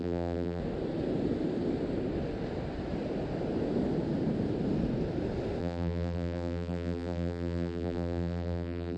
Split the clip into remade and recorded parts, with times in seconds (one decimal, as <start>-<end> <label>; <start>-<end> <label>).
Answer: 0.0-0.6 remade; 0.6-5.6 recorded; 5.6-9.0 remade